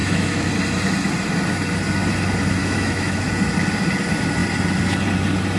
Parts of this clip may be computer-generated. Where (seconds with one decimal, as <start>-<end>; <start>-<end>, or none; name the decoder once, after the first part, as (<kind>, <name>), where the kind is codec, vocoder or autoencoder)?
0.0-0.5 (autoencoder, DAC-VAE); 2.6-3.3